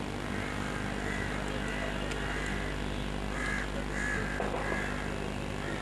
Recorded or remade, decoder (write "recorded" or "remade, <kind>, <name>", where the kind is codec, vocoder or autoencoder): recorded